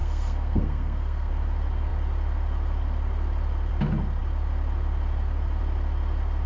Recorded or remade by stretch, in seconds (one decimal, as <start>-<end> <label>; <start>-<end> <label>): 0.0-1.3 remade; 1.3-6.5 recorded